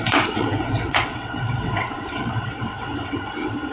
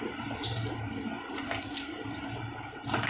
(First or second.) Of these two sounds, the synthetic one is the first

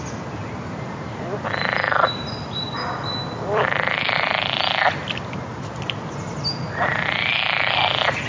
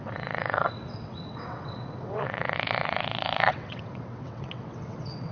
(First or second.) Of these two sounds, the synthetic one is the second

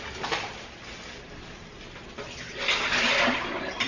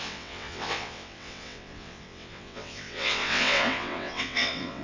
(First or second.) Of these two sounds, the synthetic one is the second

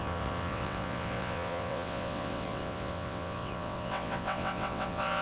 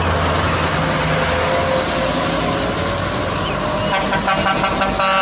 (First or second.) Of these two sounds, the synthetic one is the first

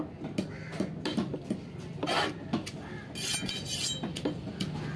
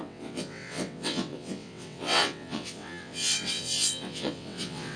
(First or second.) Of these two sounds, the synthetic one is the second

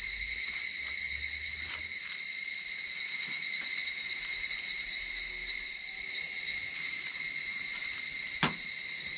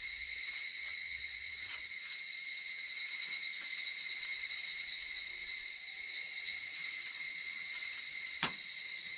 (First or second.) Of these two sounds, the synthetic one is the second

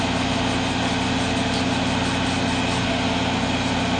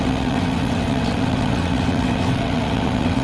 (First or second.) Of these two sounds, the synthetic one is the second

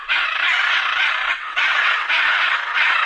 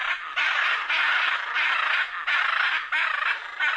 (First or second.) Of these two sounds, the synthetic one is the first